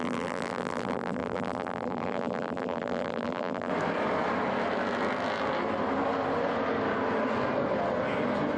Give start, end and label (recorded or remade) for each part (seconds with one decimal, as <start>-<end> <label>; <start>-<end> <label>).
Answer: 0.0-3.7 remade; 3.7-8.6 recorded